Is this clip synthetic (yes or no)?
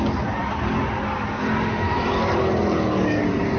no